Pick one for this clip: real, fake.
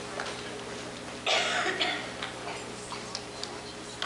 real